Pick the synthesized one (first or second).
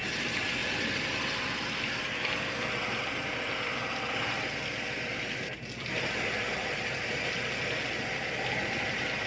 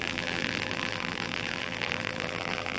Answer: second